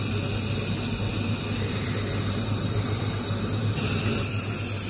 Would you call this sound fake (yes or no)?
no